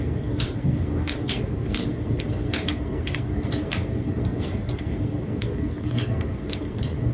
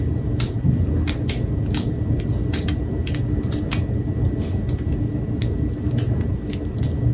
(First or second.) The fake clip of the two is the first